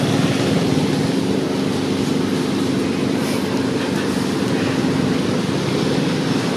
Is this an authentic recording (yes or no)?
yes